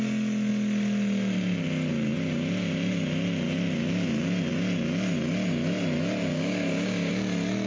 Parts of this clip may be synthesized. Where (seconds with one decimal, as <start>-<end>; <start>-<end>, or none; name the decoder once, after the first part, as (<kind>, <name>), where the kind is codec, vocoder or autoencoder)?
6.3-7.1 (codec, DAC)